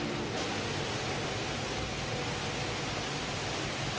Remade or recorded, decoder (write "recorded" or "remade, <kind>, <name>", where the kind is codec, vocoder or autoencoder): recorded